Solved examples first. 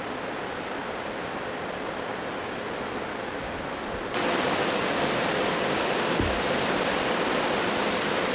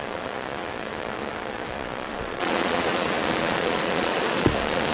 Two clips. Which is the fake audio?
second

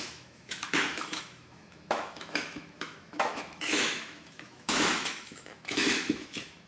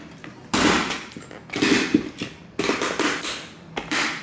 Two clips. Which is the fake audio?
first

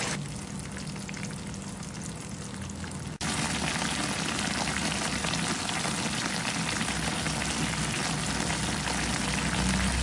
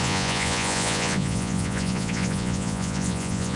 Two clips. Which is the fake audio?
second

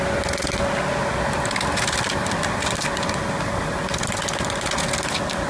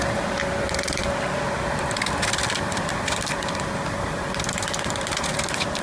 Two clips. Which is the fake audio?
second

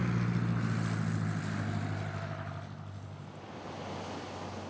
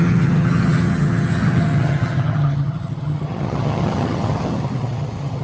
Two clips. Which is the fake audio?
second